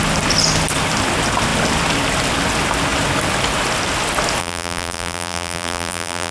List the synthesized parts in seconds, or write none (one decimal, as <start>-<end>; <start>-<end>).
4.4-6.3